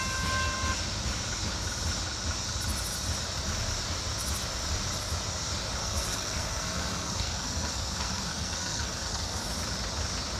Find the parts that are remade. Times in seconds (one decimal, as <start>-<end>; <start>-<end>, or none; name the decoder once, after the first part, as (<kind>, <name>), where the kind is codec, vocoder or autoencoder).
5.8-9.5 (codec, SNAC)